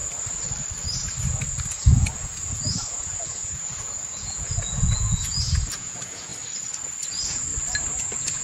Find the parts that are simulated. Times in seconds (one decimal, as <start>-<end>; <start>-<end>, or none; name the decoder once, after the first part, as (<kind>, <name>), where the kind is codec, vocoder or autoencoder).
1.7-6.3 (vocoder, Vocos); 7.1-7.5; 8.0-8.4